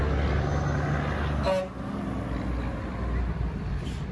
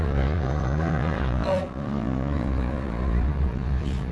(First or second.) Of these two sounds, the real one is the first